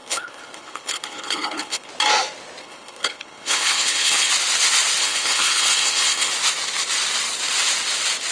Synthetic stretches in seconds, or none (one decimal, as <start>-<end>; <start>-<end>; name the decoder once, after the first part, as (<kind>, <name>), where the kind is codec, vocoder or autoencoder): 0.0-1.9 (codec, HILCodec); 2.6-4.3; 5.0-6.3